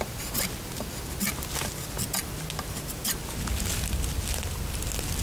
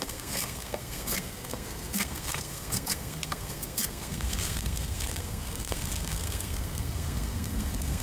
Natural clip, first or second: first